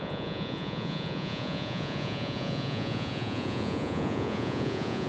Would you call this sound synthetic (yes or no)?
yes